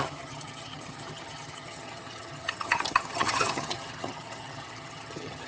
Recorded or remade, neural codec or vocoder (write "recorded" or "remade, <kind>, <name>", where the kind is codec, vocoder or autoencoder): remade, vocoder, HiFi-GAN